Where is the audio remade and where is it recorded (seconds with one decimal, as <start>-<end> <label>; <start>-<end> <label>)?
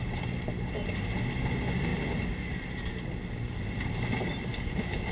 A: 0.0-5.1 recorded